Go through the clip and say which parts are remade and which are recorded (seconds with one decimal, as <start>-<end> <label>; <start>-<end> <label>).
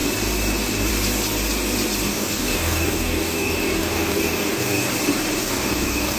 0.0-2.1 recorded; 2.1-4.9 remade; 4.9-5.4 recorded; 5.4-6.2 remade